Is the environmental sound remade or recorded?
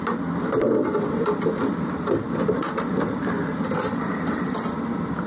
remade